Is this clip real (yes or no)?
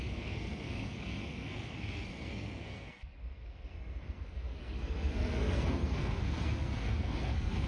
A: no